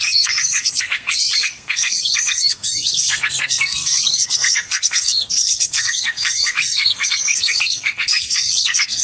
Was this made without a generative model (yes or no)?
no